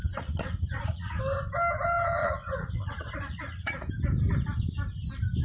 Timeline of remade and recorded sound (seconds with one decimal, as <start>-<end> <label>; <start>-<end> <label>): 0.0-1.2 remade; 1.2-2.2 recorded; 2.2-3.9 remade; 3.9-5.4 recorded